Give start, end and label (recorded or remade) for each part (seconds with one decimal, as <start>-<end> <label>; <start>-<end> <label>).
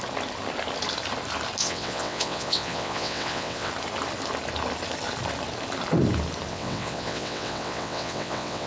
0.0-1.6 recorded; 1.6-3.7 remade; 3.7-6.5 recorded; 6.5-8.7 remade